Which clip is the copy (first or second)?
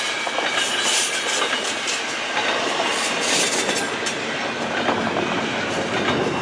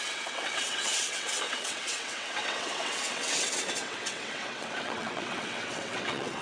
second